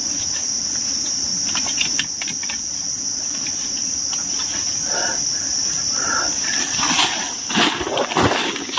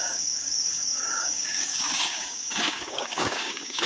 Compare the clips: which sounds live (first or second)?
first